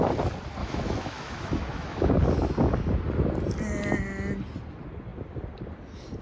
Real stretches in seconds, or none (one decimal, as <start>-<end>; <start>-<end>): 0.0-0.6; 2.1-6.2